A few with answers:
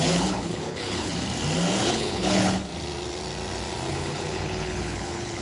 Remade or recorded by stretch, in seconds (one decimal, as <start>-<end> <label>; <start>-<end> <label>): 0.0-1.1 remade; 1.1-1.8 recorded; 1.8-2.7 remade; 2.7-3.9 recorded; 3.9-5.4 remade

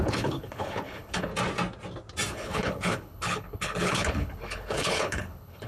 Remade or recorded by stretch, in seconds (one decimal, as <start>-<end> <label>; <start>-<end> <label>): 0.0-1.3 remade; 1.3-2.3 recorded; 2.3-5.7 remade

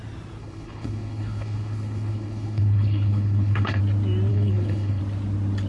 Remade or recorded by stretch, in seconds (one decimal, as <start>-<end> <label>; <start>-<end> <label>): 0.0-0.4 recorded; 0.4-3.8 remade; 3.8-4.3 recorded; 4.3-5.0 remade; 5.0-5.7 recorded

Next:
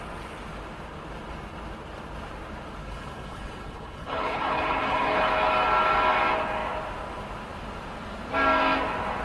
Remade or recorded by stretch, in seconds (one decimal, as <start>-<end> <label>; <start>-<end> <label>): 0.0-2.8 recorded; 2.8-5.3 remade; 5.3-9.2 recorded